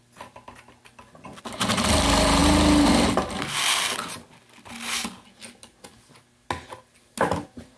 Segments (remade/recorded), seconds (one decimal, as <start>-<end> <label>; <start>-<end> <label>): 0.0-7.8 recorded